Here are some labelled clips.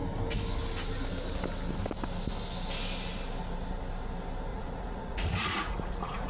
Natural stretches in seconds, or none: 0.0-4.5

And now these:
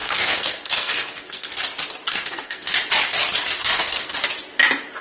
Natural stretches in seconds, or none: 1.5-2.1; 2.7-3.6; 4.2-5.0

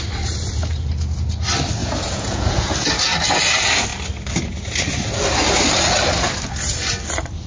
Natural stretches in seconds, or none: 0.0-1.8; 2.7-7.5